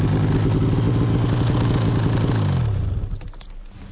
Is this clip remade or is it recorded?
recorded